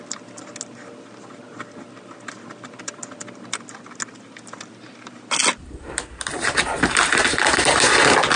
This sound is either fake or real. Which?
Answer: real